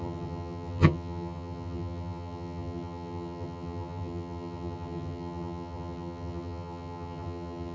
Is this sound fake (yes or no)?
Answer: yes